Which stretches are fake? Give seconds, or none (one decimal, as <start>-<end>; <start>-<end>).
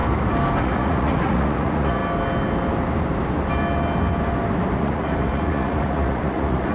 0.6-2.0; 4.8-6.7